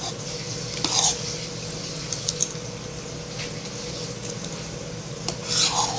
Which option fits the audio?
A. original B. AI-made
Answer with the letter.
A